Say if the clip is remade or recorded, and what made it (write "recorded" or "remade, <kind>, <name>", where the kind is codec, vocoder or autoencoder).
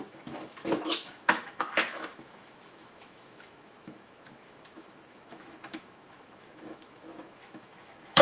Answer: remade, autoencoder, DAC-VAE